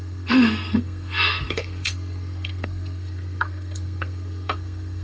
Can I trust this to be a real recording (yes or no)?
no